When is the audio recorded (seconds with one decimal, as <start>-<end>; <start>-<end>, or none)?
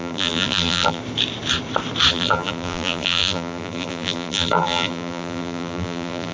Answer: 1.0-2.1